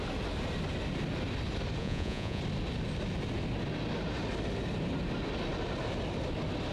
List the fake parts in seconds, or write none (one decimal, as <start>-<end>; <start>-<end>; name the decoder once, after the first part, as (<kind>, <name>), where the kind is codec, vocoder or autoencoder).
1.8-2.4 (vocoder, Vocos)